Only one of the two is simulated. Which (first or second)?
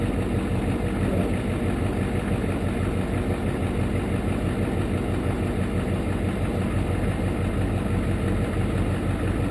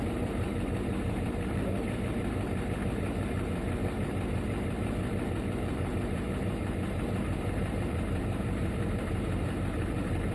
second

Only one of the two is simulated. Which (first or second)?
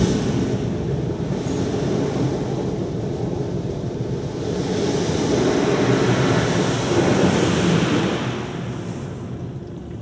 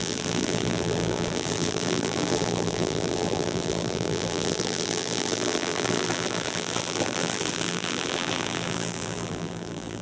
second